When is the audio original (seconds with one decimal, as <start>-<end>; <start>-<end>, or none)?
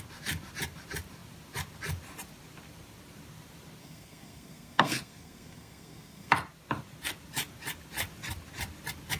0.0-3.8; 6.3-9.2